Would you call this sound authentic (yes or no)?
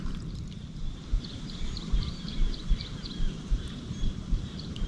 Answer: no